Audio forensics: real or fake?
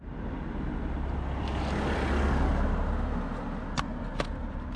real